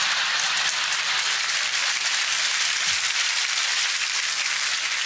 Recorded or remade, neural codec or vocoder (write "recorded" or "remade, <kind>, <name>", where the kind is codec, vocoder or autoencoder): remade, vocoder, BigVGAN v2